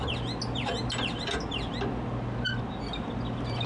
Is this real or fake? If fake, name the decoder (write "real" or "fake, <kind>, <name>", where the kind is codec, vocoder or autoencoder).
real